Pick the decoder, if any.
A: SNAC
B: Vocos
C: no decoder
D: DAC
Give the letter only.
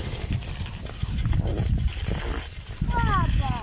C